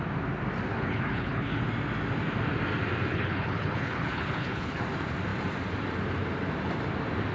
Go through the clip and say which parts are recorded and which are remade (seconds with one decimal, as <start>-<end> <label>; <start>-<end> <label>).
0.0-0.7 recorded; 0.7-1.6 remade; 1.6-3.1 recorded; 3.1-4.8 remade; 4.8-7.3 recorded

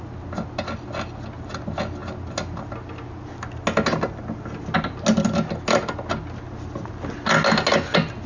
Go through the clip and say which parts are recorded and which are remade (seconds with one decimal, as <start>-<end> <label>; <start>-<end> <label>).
0.0-8.3 recorded

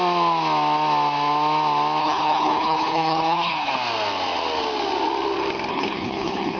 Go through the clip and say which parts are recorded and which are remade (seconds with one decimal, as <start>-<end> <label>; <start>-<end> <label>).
0.0-2.0 recorded; 2.0-3.7 remade; 3.7-5.7 recorded; 5.7-6.6 remade

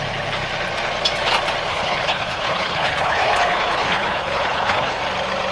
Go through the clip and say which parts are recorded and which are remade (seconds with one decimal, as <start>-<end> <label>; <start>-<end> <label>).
0.0-1.7 recorded; 1.7-5.0 remade; 5.0-5.5 recorded

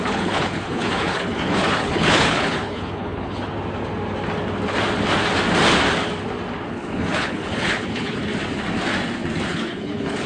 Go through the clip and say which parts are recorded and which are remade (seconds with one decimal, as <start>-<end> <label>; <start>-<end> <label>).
0.0-3.5 remade; 3.5-6.7 recorded; 6.7-8.2 remade; 8.2-9.5 recorded; 9.5-10.3 remade

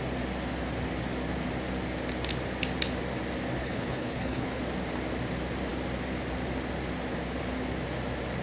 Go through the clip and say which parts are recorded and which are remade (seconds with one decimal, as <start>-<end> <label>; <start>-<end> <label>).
0.0-3.6 recorded; 3.6-4.6 remade; 4.6-8.4 recorded

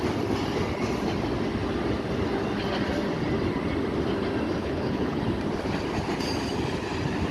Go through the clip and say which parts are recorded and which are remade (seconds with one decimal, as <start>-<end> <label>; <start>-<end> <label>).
0.0-4.6 recorded; 4.6-5.2 remade; 5.2-7.3 recorded

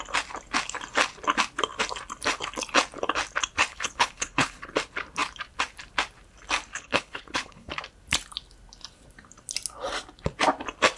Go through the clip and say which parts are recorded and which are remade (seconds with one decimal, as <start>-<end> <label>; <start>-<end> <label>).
0.0-3.7 recorded; 3.7-4.7 remade; 4.7-6.7 recorded; 6.7-7.7 remade; 7.7-11.0 recorded